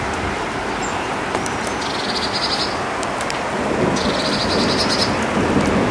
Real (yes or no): yes